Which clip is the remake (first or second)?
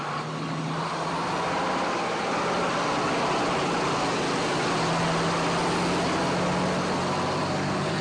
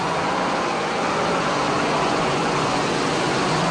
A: second